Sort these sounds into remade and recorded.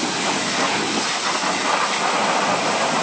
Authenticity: recorded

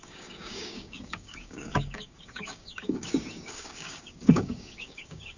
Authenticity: remade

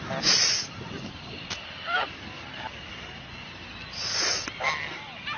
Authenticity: recorded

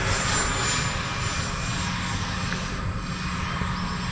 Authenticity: recorded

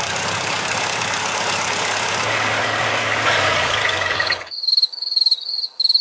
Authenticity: remade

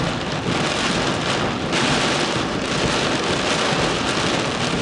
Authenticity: recorded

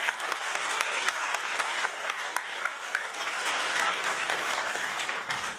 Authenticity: remade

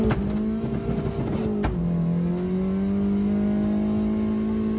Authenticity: recorded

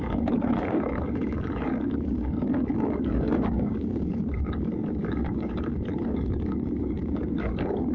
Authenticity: remade